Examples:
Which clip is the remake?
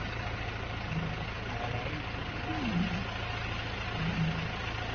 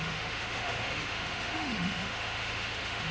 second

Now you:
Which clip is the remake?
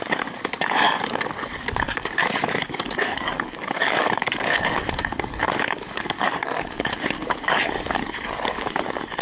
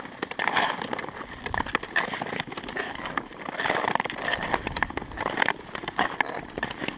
first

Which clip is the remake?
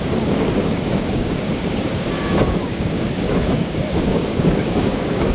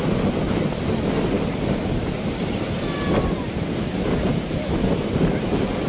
first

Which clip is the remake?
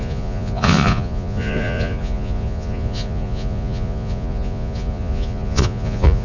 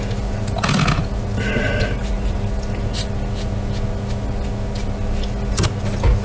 first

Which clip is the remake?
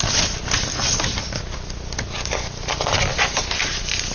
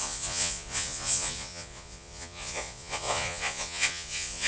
second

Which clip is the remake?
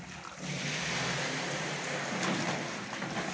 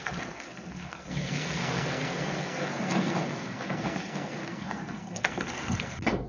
second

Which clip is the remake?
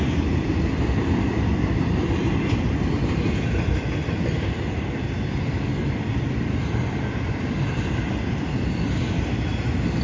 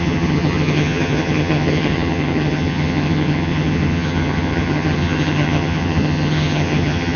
second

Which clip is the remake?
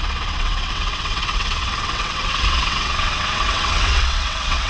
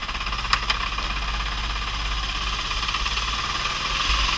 first